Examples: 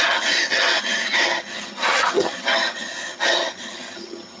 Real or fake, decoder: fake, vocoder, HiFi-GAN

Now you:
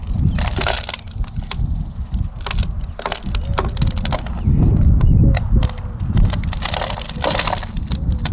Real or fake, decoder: real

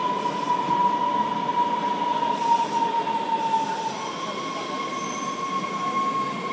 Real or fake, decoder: real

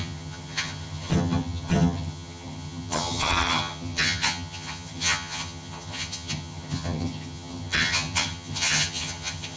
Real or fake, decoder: fake, vocoder, HiFi-GAN